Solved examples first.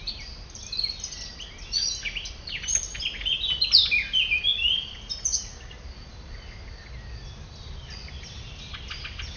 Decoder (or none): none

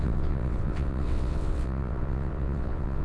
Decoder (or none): vocoder, WaveNeXt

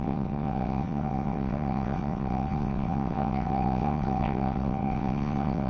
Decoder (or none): vocoder, WaveNeXt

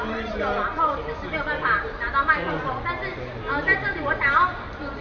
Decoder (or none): none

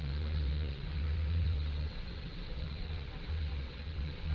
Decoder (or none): vocoder, WaveNeXt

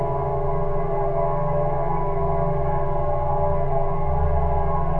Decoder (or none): none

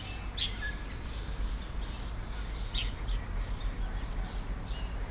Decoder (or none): none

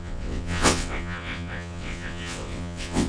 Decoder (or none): vocoder, WaveNeXt